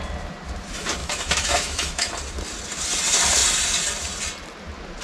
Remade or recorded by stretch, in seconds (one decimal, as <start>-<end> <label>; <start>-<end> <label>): 0.0-1.0 recorded; 1.0-2.1 remade; 2.1-5.0 recorded